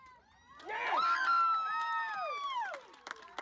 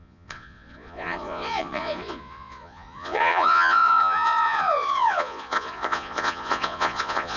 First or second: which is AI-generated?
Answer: second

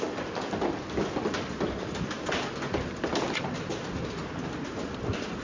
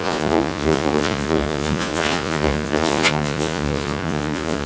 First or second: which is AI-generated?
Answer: second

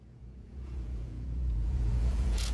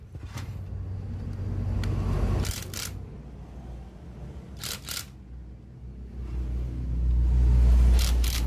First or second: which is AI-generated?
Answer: first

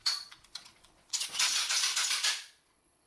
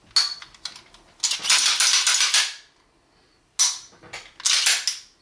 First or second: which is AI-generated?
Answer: first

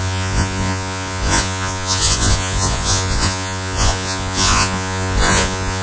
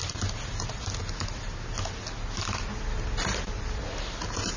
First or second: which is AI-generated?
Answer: first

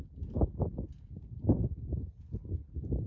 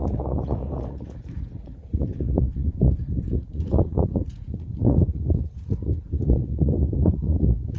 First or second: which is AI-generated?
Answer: second